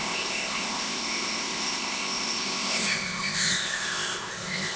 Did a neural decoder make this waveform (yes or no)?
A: yes